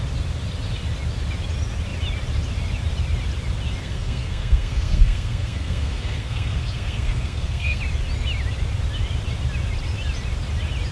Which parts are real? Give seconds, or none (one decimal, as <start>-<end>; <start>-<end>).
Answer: 0.0-3.8; 7.8-10.9